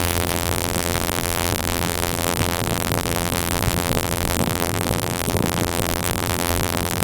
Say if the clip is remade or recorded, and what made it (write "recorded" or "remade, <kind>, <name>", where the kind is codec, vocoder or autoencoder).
remade, vocoder, BigVGAN v2